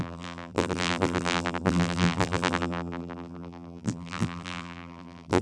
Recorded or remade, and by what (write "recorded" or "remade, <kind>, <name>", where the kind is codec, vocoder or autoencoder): remade, vocoder, BigVGAN v2